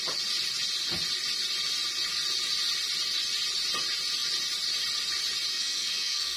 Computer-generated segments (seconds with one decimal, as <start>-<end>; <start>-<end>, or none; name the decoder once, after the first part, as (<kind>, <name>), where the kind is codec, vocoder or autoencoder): 5.5-6.4 (codec, SNAC)